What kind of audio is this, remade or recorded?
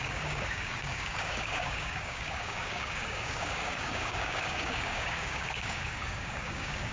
remade